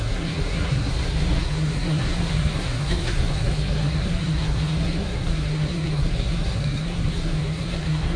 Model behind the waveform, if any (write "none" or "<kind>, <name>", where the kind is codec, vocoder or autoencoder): codec, SNAC